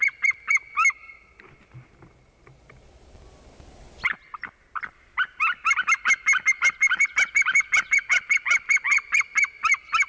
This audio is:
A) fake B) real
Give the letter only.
B